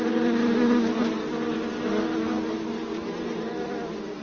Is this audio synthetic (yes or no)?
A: no